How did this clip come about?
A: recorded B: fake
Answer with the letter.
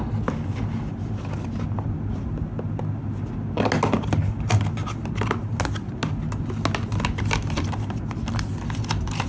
A